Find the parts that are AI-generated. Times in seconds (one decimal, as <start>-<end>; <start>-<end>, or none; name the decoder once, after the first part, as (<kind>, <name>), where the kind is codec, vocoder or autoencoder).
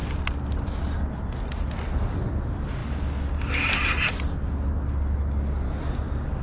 none